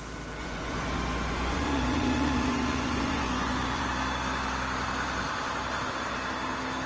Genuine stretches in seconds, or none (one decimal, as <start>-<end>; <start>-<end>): 0.0-0.4; 3.9-6.9